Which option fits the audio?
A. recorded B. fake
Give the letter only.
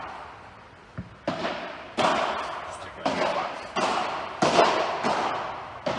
A